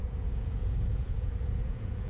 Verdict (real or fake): fake